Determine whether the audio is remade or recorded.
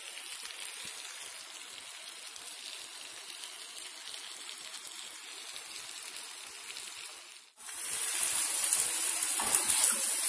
recorded